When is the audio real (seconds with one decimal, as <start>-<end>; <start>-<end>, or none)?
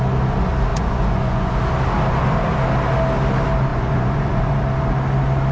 0.0-0.7; 1.5-3.7; 4.6-5.5